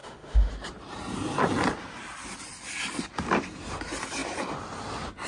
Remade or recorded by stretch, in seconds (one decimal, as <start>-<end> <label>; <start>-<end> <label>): 0.0-0.5 remade; 0.5-5.3 recorded